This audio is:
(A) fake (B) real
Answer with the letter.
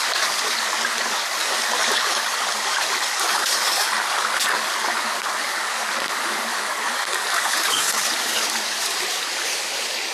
A